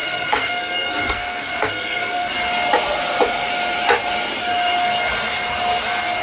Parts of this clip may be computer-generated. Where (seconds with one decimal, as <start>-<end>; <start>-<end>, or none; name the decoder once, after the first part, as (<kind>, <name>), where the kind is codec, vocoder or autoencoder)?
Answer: 0.0-2.3 (codec, SNAC)